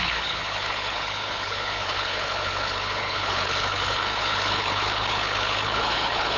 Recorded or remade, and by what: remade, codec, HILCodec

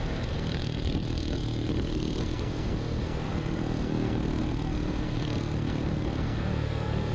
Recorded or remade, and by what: remade, codec, SNAC